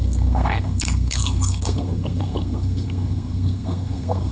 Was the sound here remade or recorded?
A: remade